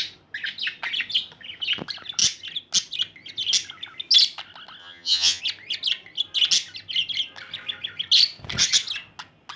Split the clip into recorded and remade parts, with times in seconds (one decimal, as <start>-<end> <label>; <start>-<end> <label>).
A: 0.0-4.8 recorded; 4.8-5.4 remade; 5.4-9.6 recorded